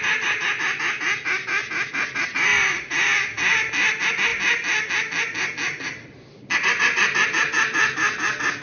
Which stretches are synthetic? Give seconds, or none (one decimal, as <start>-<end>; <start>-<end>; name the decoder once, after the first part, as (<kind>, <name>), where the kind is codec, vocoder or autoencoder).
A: none